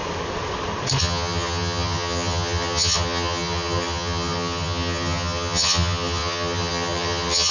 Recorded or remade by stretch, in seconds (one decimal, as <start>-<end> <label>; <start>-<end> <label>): 0.0-1.0 recorded; 1.0-7.5 remade